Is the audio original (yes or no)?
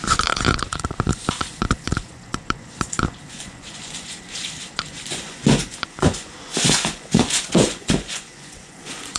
no